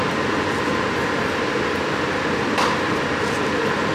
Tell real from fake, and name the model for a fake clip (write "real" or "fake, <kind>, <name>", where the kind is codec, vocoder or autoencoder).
fake, vocoder, BigVGAN v2